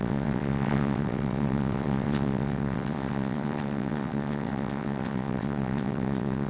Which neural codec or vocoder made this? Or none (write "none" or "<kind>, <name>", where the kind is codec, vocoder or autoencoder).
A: vocoder, WaveNeXt